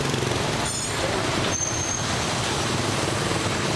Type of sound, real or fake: fake